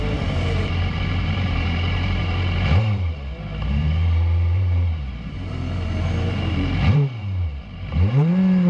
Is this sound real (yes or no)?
no